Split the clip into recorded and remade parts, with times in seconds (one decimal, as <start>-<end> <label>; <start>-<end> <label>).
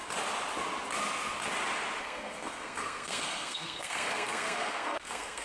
0.0-2.0 recorded; 2.0-5.4 remade